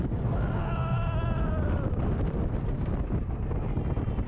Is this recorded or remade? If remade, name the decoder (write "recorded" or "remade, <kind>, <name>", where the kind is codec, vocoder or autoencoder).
recorded